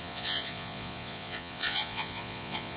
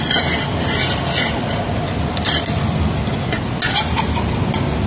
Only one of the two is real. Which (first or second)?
second